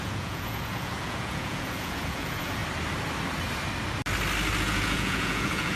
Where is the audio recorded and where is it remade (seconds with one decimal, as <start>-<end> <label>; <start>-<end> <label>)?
0.0-2.6 remade; 2.6-4.6 recorded; 4.6-5.8 remade